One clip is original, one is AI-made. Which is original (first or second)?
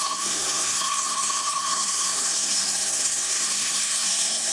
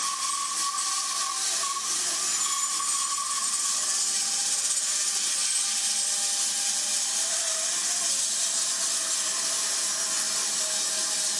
second